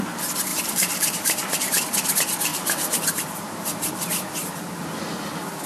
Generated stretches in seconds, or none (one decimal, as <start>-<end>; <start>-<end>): 0.5-1.8; 2.5-3.9